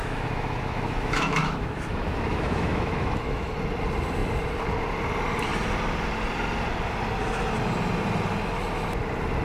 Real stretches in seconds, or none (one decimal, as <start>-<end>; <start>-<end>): 3.5-9.4